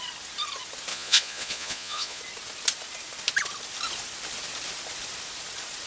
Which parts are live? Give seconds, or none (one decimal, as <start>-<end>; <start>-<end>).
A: 0.0-0.9; 2.2-5.9